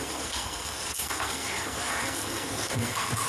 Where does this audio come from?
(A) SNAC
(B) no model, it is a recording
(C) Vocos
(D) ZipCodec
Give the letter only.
A